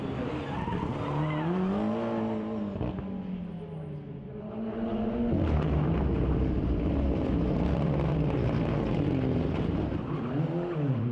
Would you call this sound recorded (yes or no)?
yes